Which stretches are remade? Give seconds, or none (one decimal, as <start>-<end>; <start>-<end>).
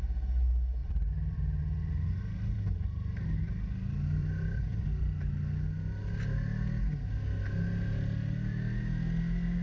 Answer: 0.8-1.6; 4.2-4.8